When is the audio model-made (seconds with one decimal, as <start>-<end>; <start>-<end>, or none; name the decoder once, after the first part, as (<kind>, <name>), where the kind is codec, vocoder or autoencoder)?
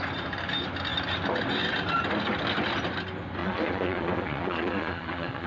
3.4-5.5 (vocoder, Vocos)